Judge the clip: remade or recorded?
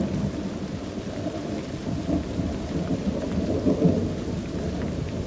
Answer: recorded